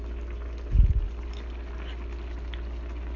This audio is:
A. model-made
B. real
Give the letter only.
B